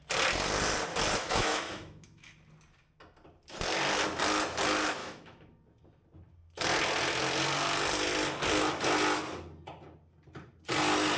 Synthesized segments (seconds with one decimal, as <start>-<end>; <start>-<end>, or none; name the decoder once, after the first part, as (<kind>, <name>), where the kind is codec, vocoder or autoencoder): 1.2-2.3 (autoencoder, DAC-VAE); 5.0-5.5